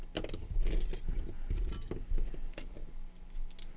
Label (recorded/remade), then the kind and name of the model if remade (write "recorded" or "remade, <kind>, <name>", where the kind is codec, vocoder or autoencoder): recorded